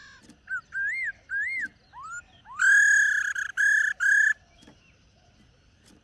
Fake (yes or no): no